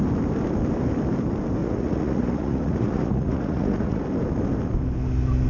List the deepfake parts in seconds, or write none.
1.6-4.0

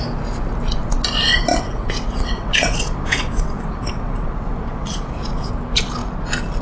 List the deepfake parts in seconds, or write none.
1.5-5.5

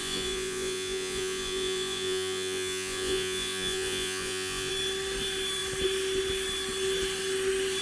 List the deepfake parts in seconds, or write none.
0.0-4.7